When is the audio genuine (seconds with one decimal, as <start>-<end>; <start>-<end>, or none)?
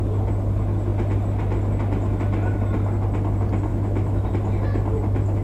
0.0-3.7; 4.3-5.4